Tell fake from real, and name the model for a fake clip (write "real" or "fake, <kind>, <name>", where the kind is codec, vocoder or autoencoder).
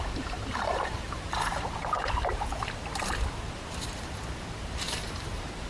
fake, vocoder, BigVGAN v2